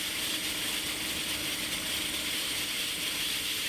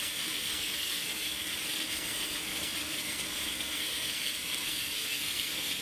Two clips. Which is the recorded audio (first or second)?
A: first